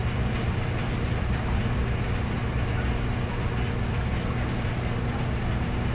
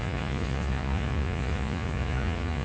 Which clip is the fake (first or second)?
second